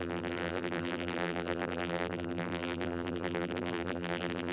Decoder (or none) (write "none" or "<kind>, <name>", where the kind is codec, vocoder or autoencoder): vocoder, BigVGAN v2